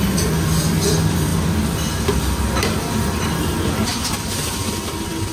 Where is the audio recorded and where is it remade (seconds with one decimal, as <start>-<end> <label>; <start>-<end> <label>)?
0.0-5.3 recorded